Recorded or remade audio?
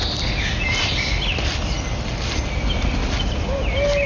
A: recorded